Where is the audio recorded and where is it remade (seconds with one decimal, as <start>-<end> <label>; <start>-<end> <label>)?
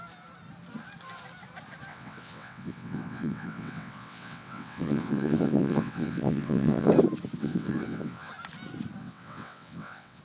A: 0.0-1.9 recorded; 1.9-6.9 remade; 6.9-7.4 recorded; 7.4-8.3 remade; 8.3-9.0 recorded; 9.0-10.2 remade